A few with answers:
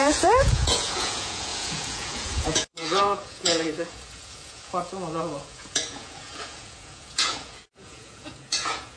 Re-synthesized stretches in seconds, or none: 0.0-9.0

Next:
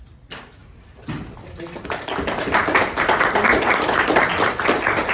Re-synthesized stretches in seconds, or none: none

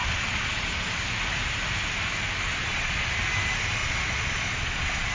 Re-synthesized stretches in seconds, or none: 0.0-0.6; 2.5-3.2; 3.8-5.1

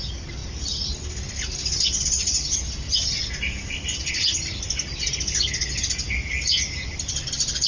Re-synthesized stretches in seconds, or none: none

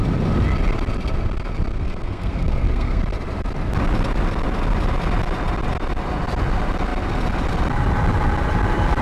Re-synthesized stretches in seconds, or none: 1.7-3.0